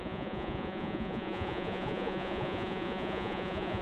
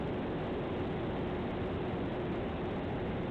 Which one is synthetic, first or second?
first